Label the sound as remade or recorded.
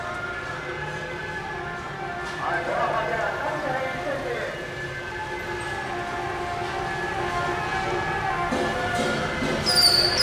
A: recorded